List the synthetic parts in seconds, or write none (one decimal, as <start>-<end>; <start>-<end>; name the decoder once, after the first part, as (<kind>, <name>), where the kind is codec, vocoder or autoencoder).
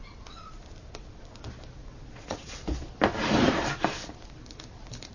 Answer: 1.9-2.5 (vocoder, Vocos)